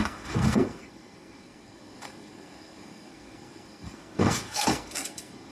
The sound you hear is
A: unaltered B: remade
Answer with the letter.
B